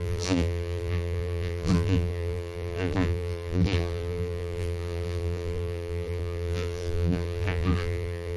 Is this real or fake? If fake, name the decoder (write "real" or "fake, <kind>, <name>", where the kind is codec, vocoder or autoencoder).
fake, vocoder, BigVGAN v2